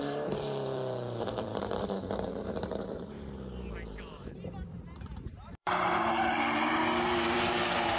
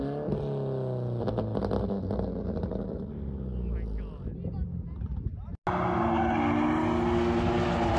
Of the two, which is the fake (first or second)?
first